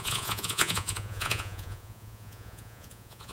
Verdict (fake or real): fake